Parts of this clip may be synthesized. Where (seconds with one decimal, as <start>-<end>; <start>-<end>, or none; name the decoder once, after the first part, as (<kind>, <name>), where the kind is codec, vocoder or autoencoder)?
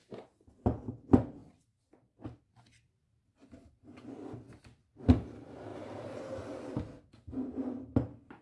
0.0-0.5 (vocoder, BigVGAN v2); 5.7-6.7